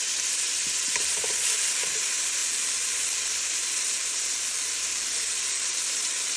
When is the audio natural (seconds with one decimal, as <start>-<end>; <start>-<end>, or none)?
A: 0.0-2.4; 6.0-6.4